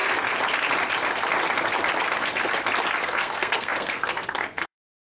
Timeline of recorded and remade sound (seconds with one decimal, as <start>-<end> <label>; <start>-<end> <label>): 0.0-3.0 recorded; 3.0-5.0 remade